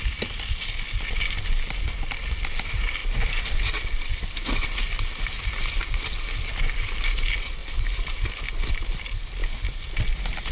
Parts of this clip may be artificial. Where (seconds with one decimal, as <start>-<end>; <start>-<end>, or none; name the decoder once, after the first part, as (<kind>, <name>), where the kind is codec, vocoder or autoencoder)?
3.0-3.5 (vocoder, BigVGAN v2); 7.6-8.2